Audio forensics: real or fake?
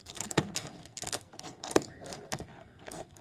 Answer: fake